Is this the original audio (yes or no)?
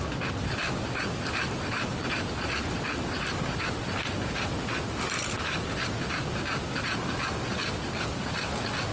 yes